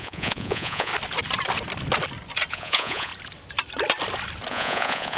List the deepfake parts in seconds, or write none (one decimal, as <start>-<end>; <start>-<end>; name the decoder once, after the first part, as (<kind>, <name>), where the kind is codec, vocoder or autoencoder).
0.0-0.9 (vocoder, Vocos); 2.5-3.1; 4.5-5.2